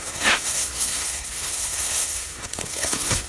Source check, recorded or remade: remade